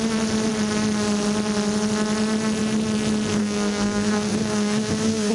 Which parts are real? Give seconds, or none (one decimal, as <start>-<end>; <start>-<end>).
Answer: 0.0-3.4